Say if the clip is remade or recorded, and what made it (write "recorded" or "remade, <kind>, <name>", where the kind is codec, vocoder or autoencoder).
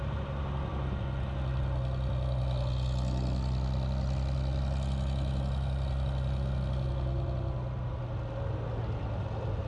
recorded